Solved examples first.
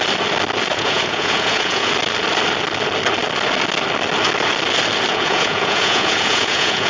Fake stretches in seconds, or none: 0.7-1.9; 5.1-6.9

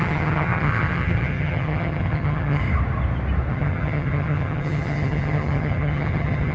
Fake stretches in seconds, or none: 0.0-2.6; 3.5-6.5

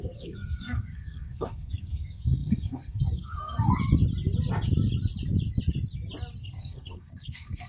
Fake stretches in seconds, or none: 0.0-3.7; 6.4-7.7